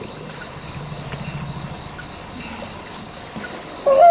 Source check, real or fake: real